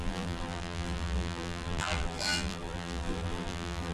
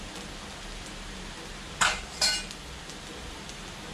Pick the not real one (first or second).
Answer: first